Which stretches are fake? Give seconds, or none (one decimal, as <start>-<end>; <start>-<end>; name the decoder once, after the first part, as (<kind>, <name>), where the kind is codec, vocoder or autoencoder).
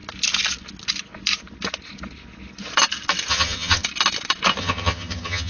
3.3-3.8 (vocoder, HiFi-GAN); 4.6-5.5